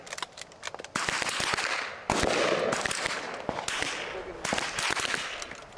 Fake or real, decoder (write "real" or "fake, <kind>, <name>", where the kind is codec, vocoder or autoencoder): real